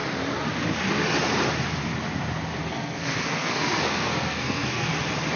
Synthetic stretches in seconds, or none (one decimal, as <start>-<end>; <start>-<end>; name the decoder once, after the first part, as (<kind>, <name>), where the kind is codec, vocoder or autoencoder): 2.6-4.9 (codec, SNAC)